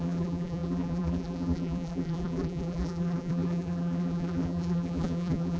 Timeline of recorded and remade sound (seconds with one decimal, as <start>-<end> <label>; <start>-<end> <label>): 0.0-5.6 remade